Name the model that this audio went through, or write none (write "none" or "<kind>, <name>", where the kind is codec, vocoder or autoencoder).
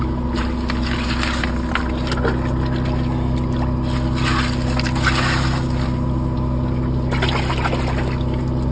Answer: none